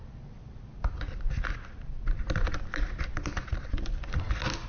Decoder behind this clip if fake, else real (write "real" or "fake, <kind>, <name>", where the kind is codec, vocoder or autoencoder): real